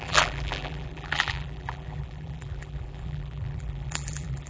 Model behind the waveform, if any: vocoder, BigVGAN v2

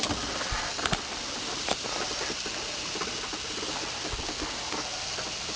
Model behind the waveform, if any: none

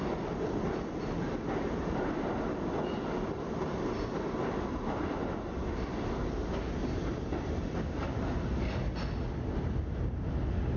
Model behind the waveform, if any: none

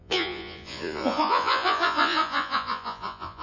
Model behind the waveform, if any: vocoder, Vocos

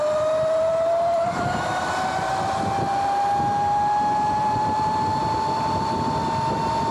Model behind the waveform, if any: none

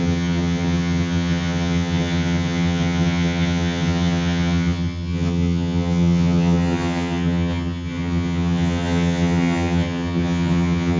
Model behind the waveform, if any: vocoder, HiFi-GAN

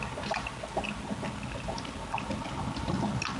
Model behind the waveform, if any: none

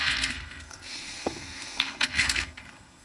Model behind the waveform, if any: codec, SNAC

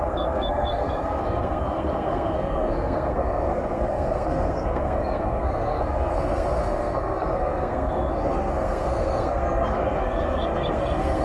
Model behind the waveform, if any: codec, SNAC